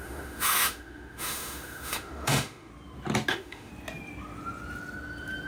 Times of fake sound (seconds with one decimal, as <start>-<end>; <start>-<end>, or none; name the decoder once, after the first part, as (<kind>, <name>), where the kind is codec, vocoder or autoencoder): 0.0-2.7 (autoencoder, DAC-VAE); 3.3-3.7